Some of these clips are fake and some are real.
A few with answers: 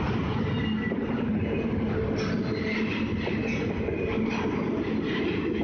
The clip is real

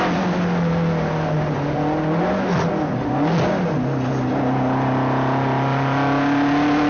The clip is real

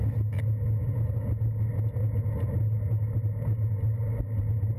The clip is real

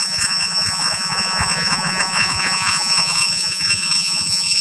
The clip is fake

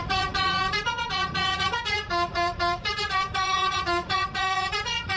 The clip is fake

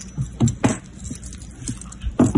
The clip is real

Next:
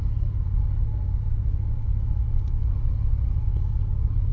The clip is fake